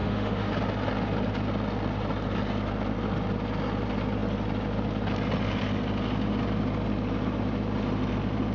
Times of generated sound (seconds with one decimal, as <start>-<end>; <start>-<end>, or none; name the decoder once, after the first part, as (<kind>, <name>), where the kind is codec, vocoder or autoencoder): 0.0-0.5 (autoencoder, DAC-VAE)